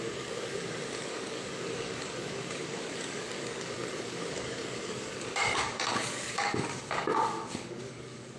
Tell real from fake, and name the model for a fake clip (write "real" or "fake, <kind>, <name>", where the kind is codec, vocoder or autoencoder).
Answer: fake, codec, DAC